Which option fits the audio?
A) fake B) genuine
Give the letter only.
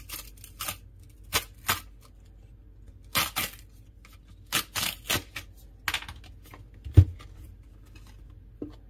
B